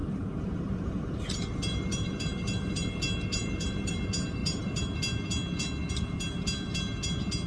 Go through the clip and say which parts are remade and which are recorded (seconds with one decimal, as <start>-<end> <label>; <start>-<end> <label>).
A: 0.0-3.9 remade; 3.9-4.4 recorded; 4.4-5.0 remade; 5.0-7.5 recorded